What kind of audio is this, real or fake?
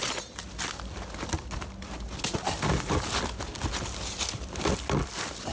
real